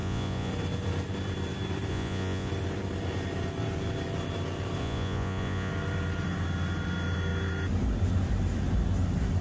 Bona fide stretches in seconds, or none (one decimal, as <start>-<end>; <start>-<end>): 0.5-1.9; 2.5-4.8; 5.7-9.4